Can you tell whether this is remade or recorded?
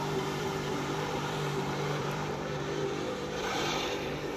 remade